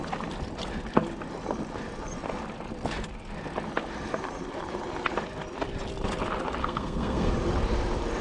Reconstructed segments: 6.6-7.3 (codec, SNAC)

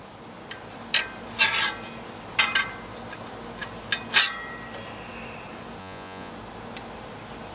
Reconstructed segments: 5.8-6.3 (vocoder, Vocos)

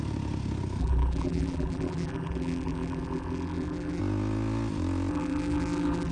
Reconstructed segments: 0.8-4.0 (vocoder, BigVGAN v2); 5.1-6.1

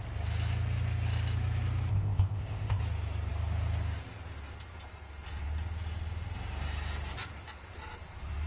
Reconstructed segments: 1.9-2.8 (codec, ZipCodec)

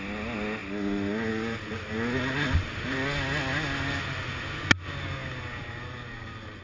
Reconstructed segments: none

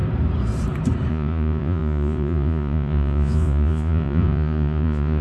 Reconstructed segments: 1.1-5.2 (vocoder, Vocos)